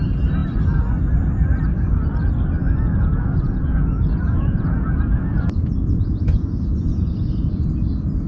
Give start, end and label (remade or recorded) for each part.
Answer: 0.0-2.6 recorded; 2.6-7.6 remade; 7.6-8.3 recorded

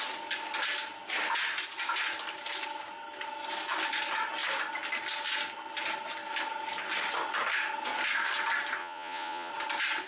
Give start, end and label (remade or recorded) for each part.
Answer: 0.0-8.8 recorded; 8.8-9.5 remade; 9.5-10.1 recorded

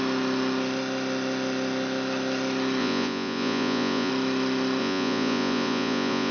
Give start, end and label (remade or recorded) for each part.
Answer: 0.0-2.8 recorded; 2.8-4.1 remade; 4.1-4.8 recorded; 4.8-6.3 remade

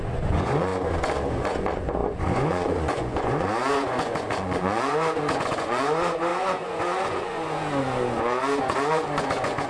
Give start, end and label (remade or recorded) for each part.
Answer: 0.0-0.7 remade; 0.7-1.3 recorded; 1.3-9.7 remade

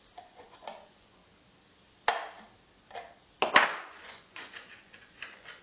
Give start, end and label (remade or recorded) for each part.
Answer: 0.0-1.2 remade; 1.2-3.5 recorded; 3.5-5.6 remade